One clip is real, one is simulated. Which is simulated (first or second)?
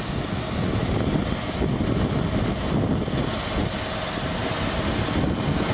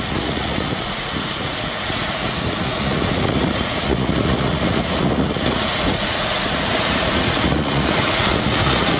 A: second